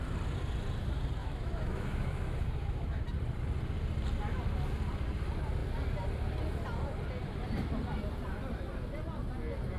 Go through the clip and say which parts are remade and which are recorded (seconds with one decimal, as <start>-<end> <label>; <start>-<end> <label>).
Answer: 0.0-1.2 recorded; 1.2-3.0 remade; 3.0-9.8 recorded